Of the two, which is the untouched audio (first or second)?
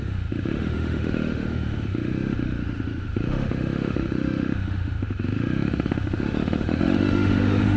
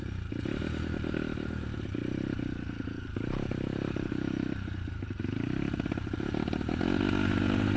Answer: second